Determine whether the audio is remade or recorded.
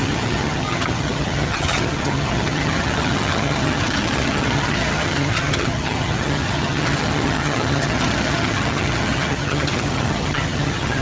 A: remade